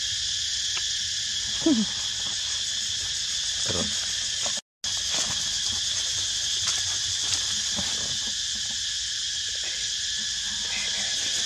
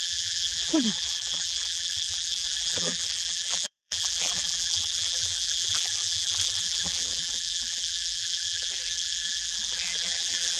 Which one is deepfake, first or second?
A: second